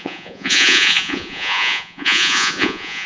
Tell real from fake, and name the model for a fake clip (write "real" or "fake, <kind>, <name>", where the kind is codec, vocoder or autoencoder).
fake, vocoder, Vocos